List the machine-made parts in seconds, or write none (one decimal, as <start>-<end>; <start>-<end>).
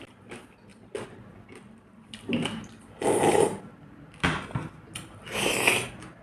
none